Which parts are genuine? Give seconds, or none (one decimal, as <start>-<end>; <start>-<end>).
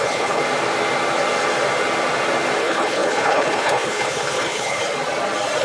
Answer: 0.4-2.6; 4.8-5.6